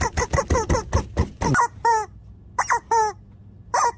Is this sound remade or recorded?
recorded